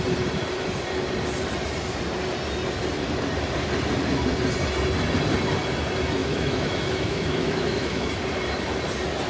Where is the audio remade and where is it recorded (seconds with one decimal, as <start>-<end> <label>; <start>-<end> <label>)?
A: 0.0-6.2 recorded; 6.2-8.1 remade; 8.1-9.3 recorded